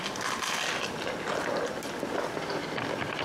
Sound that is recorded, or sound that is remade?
recorded